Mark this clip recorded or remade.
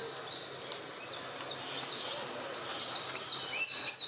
recorded